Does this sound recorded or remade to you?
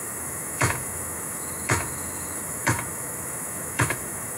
remade